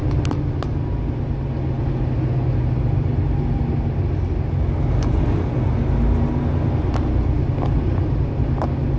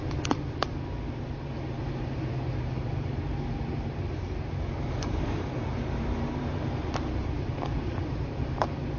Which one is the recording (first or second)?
first